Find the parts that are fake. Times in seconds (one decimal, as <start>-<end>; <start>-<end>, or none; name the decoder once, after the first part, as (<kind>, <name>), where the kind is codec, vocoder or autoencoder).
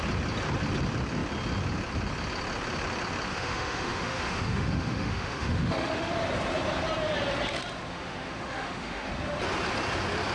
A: 3.3-6.1 (autoencoder, DAC-VAE); 7.9-9.1